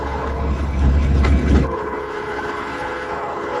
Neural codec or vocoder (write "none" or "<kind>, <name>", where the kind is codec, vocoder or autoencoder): codec, HILCodec